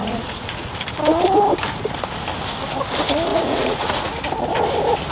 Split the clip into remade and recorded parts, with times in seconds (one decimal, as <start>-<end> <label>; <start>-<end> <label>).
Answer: 0.0-0.7 remade; 0.7-3.3 recorded; 3.3-4.1 remade; 4.1-5.1 recorded